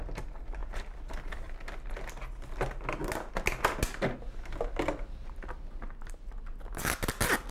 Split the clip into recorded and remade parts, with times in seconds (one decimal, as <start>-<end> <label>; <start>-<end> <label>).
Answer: 0.0-7.5 recorded